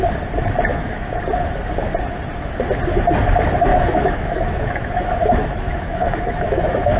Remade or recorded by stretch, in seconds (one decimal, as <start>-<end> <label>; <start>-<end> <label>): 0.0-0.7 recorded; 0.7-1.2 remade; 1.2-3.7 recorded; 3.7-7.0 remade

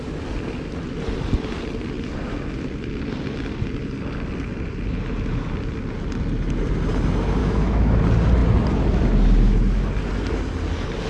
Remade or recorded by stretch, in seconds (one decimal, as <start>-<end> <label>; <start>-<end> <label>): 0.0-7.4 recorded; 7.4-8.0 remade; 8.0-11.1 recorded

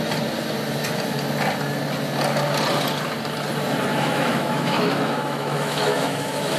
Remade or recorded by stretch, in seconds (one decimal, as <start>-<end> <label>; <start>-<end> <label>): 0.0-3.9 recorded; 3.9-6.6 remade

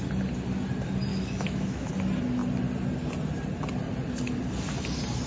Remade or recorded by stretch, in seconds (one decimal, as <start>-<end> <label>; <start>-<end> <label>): 0.0-1.1 recorded; 1.1-1.9 remade; 1.9-5.3 recorded

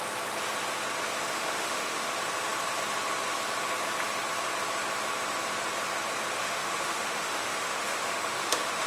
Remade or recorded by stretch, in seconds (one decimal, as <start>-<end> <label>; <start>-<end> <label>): 0.0-1.3 recorded; 1.3-2.1 remade; 2.1-6.4 recorded; 6.4-8.9 remade

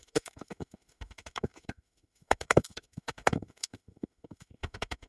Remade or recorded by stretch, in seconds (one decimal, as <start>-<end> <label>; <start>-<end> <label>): 0.0-5.1 remade

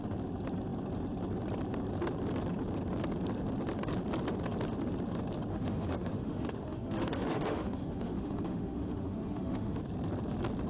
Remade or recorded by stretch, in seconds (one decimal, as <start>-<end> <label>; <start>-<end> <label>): 0.0-5.5 recorded; 5.5-9.8 remade; 9.8-10.7 recorded